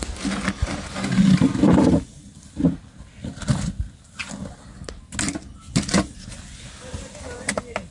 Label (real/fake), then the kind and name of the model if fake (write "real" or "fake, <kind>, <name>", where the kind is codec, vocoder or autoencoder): real